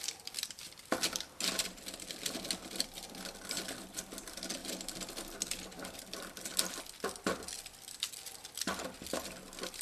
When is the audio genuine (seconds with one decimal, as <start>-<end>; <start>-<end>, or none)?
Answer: 0.0-9.8